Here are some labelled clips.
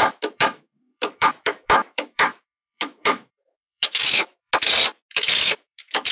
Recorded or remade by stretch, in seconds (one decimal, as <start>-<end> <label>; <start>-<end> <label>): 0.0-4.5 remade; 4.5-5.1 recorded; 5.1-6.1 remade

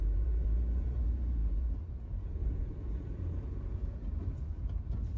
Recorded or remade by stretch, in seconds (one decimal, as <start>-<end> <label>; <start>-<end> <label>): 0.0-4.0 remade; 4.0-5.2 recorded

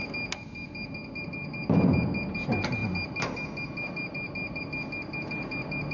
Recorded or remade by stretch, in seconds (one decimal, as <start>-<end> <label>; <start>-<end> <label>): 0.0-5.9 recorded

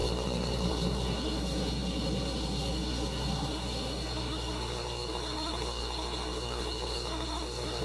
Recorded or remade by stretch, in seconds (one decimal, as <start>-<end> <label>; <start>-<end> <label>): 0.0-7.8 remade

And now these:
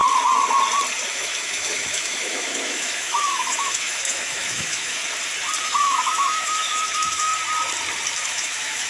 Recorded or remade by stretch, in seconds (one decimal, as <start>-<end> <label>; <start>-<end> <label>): 0.0-1.1 recorded; 1.1-5.0 remade; 5.0-5.6 recorded; 5.6-7.3 remade; 7.3-8.2 recorded; 8.2-8.9 remade

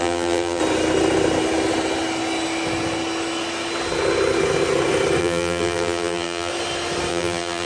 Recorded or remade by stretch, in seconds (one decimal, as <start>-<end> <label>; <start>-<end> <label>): 0.0-0.6 remade; 0.6-5.2 recorded; 5.2-6.5 remade; 6.5-7.1 recorded; 7.1-7.7 remade

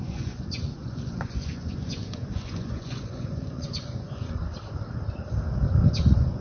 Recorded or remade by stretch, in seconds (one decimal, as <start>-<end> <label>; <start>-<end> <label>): 0.0-4.5 remade; 4.5-6.0 recorded; 6.0-6.4 remade

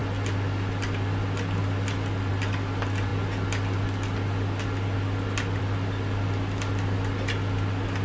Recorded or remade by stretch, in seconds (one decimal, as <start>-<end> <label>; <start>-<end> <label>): 0.0-8.0 recorded